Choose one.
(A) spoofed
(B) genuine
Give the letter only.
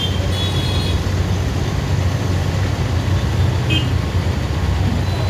B